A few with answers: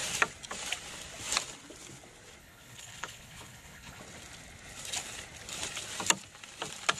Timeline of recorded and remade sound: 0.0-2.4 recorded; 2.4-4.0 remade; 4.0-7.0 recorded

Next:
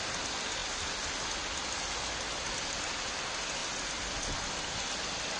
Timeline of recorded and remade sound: 0.0-5.4 recorded

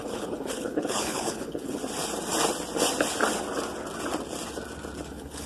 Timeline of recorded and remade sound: 0.0-1.8 remade; 1.8-5.1 recorded; 5.1-5.5 remade

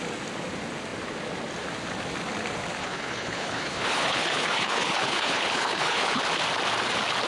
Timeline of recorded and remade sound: 0.0-2.8 recorded; 2.8-6.2 remade; 6.2-7.3 recorded

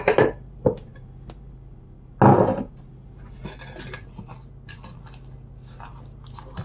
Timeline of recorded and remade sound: 0.0-6.6 recorded